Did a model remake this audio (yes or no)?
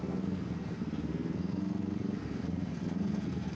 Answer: yes